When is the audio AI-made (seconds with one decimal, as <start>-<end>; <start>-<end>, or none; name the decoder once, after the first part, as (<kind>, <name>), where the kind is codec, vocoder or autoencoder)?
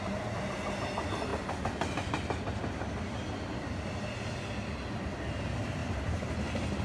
5.8-6.8 (vocoder, BigVGAN v2)